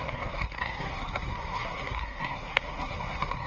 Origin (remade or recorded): remade